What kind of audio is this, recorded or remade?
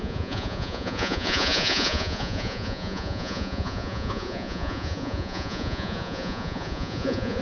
remade